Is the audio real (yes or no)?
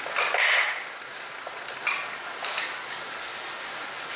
yes